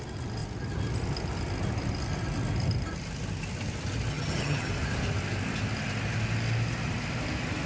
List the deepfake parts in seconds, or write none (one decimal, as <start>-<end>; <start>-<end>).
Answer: 4.1-4.7